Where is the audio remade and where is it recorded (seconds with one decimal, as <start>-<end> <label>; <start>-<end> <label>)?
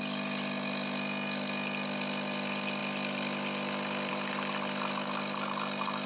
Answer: 0.0-6.1 recorded